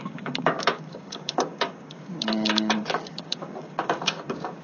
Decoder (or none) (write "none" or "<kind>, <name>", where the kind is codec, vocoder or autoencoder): codec, DAC